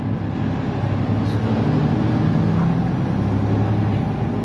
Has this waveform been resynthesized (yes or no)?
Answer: no